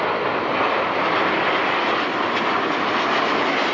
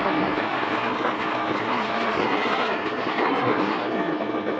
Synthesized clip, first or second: second